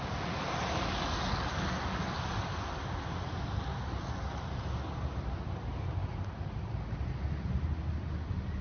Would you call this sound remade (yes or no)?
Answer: no